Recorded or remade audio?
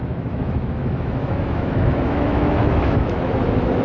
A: remade